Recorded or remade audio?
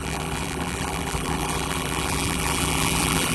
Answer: remade